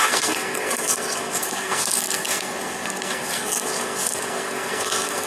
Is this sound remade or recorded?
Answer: remade